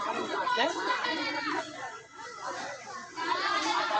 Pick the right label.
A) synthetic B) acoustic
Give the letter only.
A